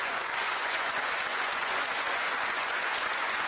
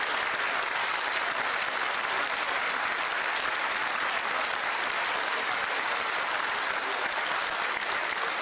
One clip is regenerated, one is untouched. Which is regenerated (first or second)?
first